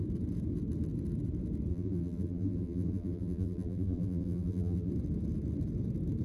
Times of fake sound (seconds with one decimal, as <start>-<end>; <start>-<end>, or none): 1.7-4.9